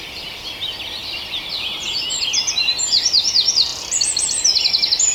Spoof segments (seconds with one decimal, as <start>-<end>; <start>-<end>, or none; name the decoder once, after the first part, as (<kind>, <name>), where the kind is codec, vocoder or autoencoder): none